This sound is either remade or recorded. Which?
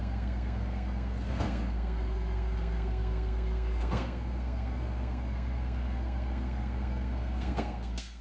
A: remade